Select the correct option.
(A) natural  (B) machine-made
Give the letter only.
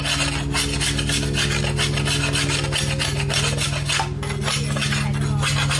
A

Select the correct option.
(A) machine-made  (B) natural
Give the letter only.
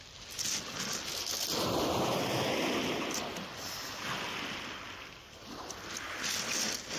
B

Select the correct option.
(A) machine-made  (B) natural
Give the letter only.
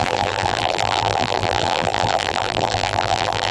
A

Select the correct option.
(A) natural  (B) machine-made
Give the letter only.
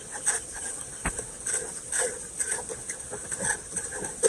A